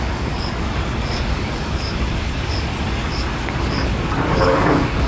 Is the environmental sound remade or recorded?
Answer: remade